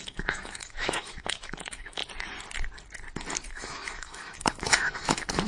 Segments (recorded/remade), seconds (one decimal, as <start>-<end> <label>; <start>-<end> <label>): 0.0-2.0 remade; 2.0-3.5 recorded; 3.5-5.5 remade